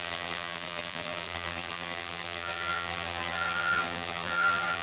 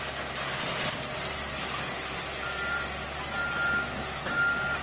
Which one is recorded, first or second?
second